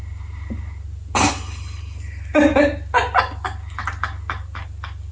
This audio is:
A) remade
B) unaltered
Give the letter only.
B